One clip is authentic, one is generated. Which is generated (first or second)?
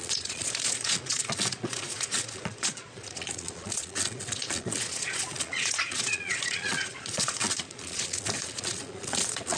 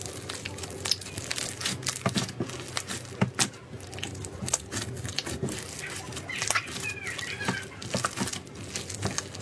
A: first